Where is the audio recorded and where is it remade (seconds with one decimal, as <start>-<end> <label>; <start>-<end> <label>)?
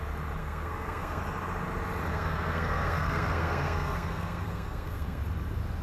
0.0-0.4 recorded; 0.4-1.2 remade; 1.2-2.1 recorded; 2.1-5.2 remade; 5.2-5.8 recorded